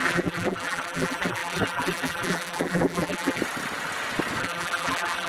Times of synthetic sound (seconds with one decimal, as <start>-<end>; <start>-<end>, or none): 0.0-3.4; 4.4-5.3